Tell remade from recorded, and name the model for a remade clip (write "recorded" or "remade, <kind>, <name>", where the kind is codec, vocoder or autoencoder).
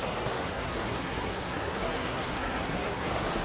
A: remade, codec, SNAC